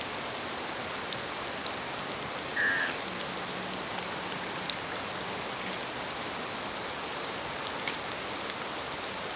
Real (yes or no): yes